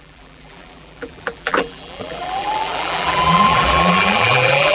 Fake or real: fake